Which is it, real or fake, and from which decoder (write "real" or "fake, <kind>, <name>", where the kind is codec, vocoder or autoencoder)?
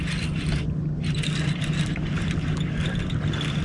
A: real